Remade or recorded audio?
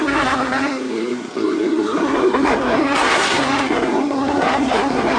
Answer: remade